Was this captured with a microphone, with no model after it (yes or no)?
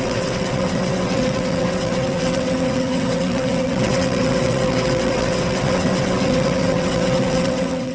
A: no